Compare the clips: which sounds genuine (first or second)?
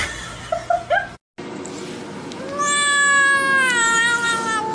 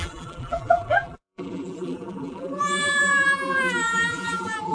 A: first